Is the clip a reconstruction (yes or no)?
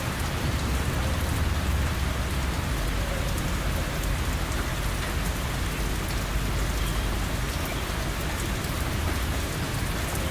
no